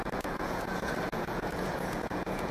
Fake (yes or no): yes